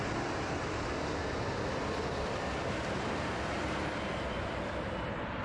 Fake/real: real